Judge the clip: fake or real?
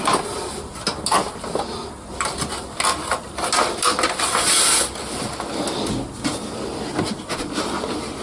real